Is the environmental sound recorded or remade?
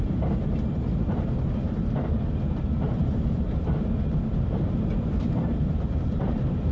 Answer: remade